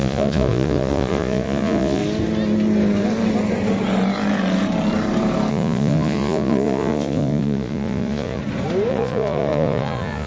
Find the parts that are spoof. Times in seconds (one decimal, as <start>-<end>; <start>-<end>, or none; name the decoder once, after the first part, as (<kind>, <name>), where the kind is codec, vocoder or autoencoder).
0.0-2.0 (vocoder, Vocos); 5.5-8.4; 8.9-10.3